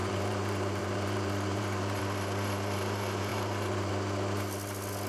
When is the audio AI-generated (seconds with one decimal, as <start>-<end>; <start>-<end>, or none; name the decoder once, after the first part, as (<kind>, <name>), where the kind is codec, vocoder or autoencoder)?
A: 0.0-2.0 (vocoder, BigVGAN v2); 3.3-3.9